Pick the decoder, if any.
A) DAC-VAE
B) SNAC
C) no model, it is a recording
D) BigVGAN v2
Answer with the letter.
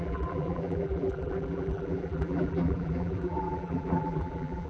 D